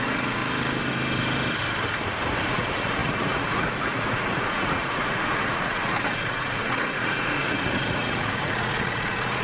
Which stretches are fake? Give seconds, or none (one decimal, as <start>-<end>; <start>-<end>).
0.0-0.4; 2.4-9.4